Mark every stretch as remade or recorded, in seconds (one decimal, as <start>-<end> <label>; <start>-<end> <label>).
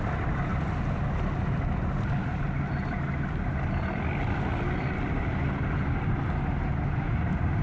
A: 0.0-7.6 recorded